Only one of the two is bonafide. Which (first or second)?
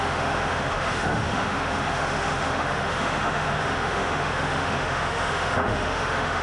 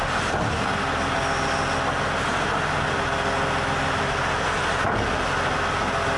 second